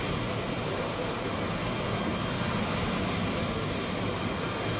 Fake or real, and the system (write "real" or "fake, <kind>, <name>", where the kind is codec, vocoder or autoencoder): real